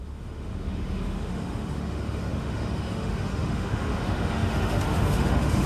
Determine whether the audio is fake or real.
fake